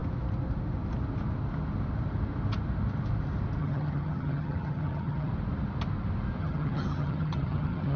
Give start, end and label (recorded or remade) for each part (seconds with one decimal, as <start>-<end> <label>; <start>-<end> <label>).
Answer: 0.0-3.6 recorded; 3.6-5.3 remade; 5.3-6.4 recorded; 6.4-8.0 remade